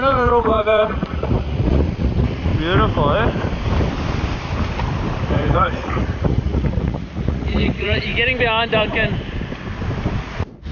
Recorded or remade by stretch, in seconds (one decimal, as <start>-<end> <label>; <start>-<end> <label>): 0.0-2.5 remade; 2.5-5.3 recorded; 5.3-8.1 remade; 8.1-10.2 recorded; 10.2-10.7 remade